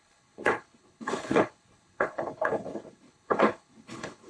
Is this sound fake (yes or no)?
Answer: yes